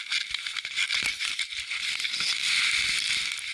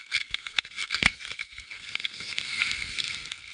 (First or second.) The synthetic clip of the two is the second